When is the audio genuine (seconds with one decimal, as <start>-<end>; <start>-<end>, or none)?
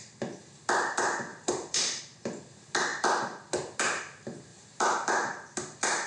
0.0-1.3; 2.0-4.5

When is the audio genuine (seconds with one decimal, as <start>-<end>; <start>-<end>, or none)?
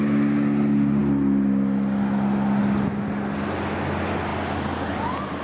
0.0-5.4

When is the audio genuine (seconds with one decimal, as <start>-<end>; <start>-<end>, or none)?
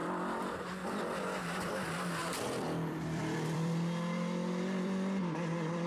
0.0-2.2